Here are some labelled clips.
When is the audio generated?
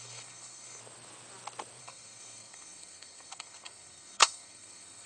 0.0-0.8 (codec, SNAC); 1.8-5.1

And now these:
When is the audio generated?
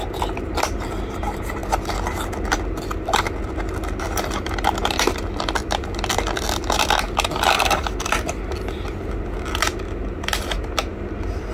none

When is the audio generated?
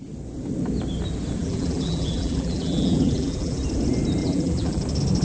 1.4-3.6 (vocoder, BigVGAN v2); 4.2-4.8